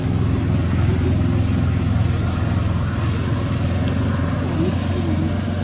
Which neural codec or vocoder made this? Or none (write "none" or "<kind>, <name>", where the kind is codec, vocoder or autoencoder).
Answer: none